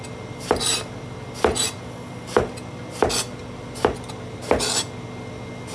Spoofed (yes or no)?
no